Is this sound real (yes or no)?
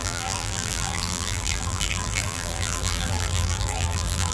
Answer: no